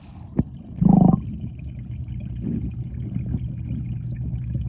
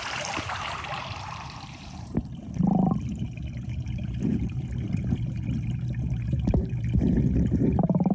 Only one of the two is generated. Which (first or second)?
second